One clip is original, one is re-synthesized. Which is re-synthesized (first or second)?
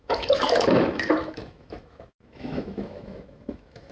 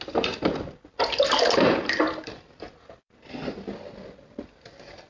first